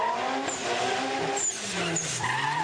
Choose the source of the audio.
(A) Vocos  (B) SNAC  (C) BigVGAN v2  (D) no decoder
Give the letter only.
D